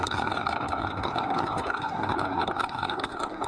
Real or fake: fake